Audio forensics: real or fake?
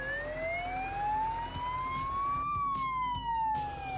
real